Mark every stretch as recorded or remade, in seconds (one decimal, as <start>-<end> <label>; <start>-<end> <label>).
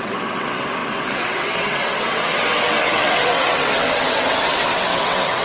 0.0-5.4 remade